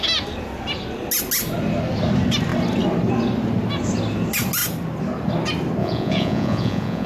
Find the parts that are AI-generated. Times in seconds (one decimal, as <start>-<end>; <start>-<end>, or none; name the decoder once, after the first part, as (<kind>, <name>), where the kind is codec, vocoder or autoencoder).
5.8-7.1 (vocoder, Vocos)